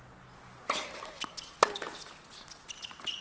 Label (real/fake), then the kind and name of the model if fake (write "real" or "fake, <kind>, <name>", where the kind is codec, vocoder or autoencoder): real